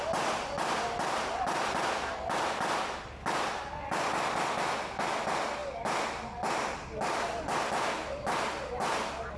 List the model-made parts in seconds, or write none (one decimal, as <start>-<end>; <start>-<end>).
none

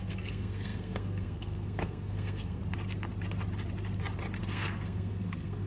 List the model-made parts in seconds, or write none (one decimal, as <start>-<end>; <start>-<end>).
0.0-2.6; 4.4-5.7